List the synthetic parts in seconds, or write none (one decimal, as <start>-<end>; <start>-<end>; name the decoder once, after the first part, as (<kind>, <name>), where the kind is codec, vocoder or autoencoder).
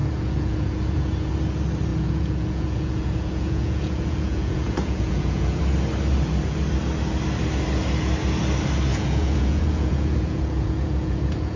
0.0-1.3 (vocoder, Vocos); 1.9-5.6; 8.9-11.6